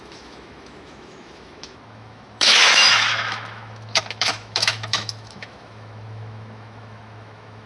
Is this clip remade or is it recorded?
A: remade